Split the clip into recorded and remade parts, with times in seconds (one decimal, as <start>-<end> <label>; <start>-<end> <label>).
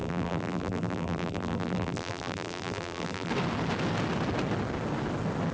0.0-3.3 remade; 3.3-5.5 recorded